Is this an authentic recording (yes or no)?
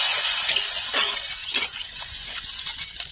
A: no